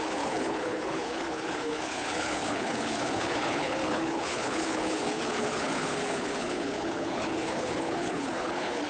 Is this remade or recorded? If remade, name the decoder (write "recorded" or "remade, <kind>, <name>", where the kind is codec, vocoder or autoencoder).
remade, codec, HILCodec